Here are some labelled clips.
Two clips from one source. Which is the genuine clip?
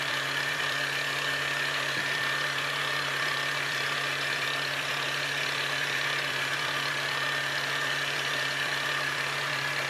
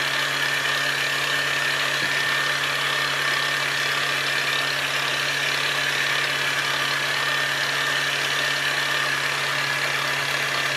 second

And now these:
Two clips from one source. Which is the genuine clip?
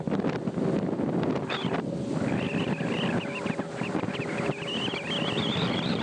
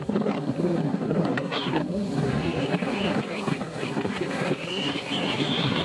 first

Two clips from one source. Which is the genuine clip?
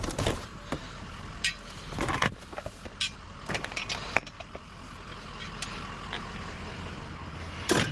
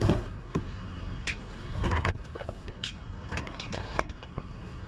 first